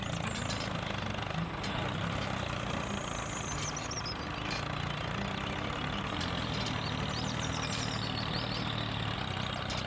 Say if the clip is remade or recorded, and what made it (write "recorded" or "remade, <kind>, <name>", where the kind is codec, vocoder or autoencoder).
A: recorded